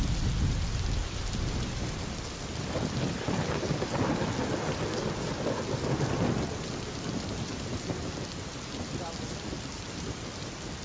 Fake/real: real